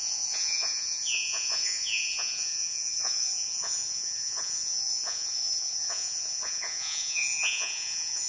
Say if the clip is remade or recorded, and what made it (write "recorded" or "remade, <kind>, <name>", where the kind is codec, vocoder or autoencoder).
remade, vocoder, Vocos